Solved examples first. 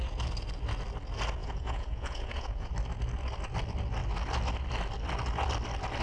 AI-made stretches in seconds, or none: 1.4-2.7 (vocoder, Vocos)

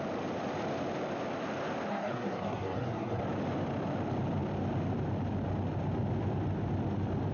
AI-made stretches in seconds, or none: 1.9-3.2 (codec, SNAC)